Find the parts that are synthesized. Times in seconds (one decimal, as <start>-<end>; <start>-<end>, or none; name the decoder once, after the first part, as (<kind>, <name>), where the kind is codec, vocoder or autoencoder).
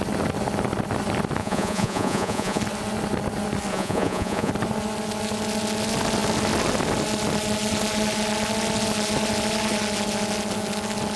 1.4-2.6 (vocoder, Vocos); 3.7-4.5